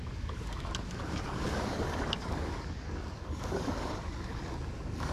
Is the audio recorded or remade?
remade